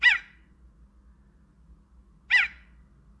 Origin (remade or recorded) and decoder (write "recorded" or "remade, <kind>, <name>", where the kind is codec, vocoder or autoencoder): recorded